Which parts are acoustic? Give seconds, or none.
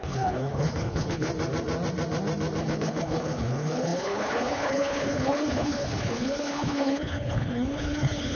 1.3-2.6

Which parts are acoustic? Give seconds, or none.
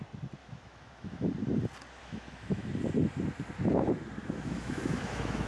0.0-0.4; 1.3-2.0; 2.7-4.2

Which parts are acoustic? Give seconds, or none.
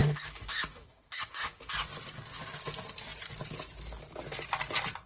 1.7-5.1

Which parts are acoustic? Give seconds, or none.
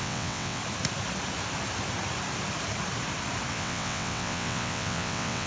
0.6-3.5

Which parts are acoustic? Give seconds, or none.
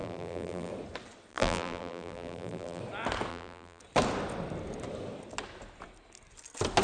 0.7-1.3; 2.8-3.3; 3.8-6.8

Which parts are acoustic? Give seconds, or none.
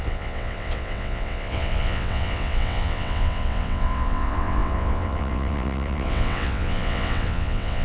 none